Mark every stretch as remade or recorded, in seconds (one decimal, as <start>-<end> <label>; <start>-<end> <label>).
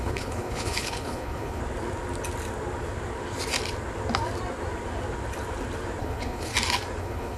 0.0-1.6 remade; 1.6-6.0 recorded; 6.0-6.5 remade; 6.5-7.0 recorded; 7.0-7.4 remade